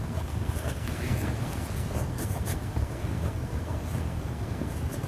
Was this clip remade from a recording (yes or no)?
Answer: yes